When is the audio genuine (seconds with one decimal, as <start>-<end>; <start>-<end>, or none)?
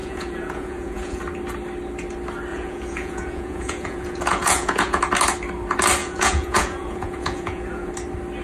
1.2-2.5; 5.0-6.0; 7.9-8.4